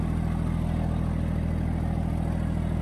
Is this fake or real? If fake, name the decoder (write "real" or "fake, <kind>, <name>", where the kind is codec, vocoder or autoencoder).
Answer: real